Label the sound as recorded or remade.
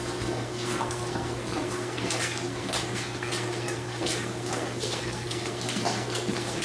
remade